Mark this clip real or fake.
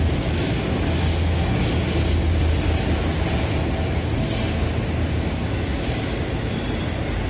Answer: real